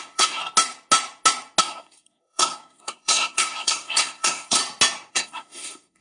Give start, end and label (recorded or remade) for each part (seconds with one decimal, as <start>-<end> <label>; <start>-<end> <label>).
0.0-0.4 remade; 0.4-1.6 recorded; 1.6-4.6 remade; 4.6-5.1 recorded; 5.1-6.0 remade